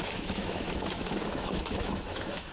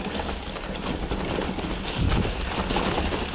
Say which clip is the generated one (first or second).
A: first